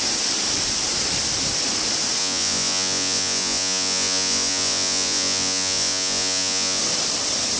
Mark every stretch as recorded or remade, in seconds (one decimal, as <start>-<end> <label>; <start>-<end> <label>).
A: 0.0-2.2 recorded; 2.2-6.8 remade; 6.8-7.6 recorded